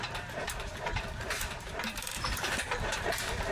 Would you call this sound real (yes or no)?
no